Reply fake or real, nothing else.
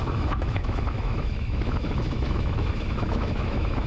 fake